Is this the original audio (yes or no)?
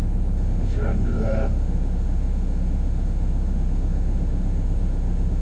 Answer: no